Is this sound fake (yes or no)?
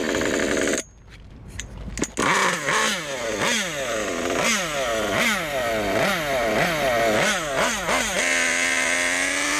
no